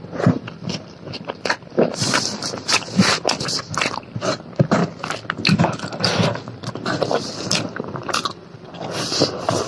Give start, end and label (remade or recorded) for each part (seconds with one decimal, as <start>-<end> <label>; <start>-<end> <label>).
0.0-4.8 remade; 4.8-9.0 recorded; 9.0-9.7 remade